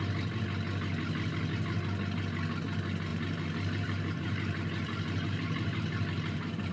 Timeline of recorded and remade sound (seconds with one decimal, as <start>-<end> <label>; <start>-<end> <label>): 0.0-3.1 recorded; 3.1-6.7 remade